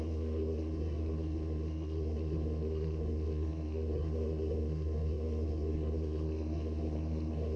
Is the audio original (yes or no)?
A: no